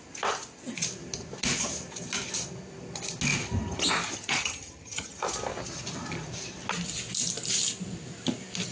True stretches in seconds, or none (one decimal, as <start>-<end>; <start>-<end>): 0.0-4.4; 5.2-8.7